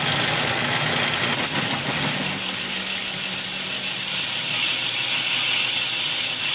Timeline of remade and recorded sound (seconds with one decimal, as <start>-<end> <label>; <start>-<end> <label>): 0.0-6.5 recorded